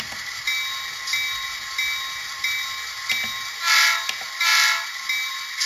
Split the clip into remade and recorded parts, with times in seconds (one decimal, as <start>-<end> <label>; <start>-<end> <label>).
0.0-5.7 recorded